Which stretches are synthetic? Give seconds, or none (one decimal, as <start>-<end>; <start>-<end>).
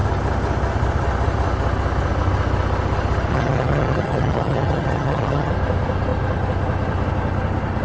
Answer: 3.3-5.5